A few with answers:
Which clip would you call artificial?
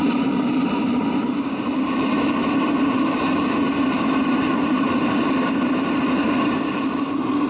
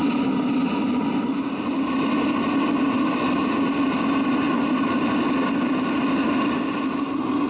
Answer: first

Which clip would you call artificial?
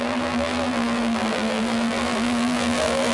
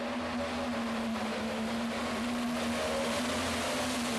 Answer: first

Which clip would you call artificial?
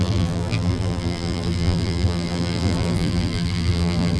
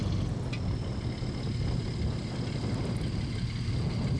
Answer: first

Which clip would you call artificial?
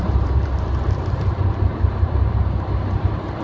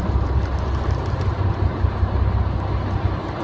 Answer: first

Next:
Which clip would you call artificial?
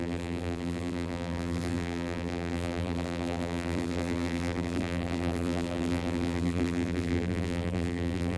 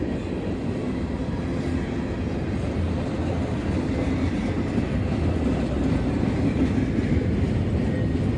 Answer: first